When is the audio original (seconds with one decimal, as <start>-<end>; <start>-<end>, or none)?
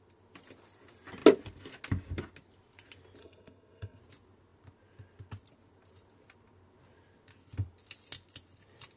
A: 0.0-3.2; 4.0-9.0